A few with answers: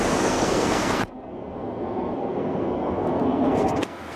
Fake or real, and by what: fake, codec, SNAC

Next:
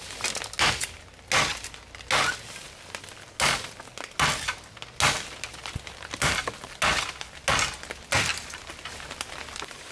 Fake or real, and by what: real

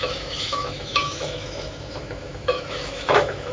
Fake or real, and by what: fake, autoencoder, DAC-VAE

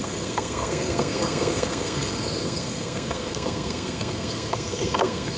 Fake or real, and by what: fake, codec, SNAC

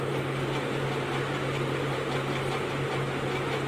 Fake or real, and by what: real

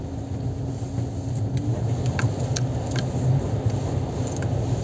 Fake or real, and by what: real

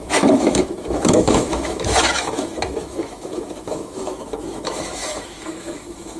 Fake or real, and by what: fake, autoencoder, DAC-VAE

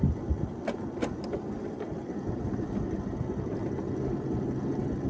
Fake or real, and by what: real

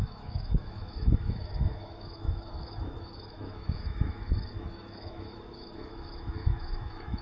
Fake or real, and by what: fake, autoencoder, DAC-VAE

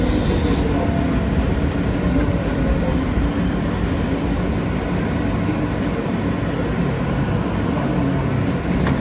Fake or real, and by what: real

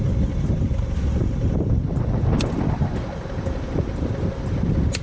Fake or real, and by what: real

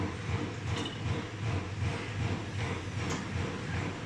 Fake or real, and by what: real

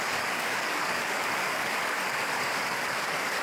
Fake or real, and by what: fake, codec, DAC